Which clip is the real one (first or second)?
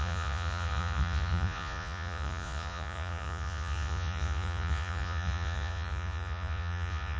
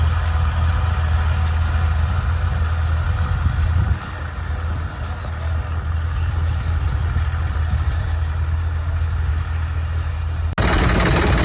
second